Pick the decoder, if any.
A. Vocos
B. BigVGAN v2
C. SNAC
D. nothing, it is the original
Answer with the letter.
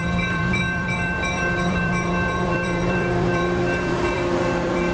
B